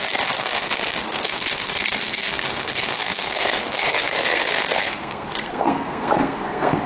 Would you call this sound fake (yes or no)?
yes